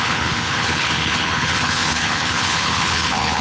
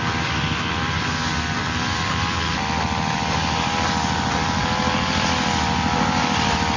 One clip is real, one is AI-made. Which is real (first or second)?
second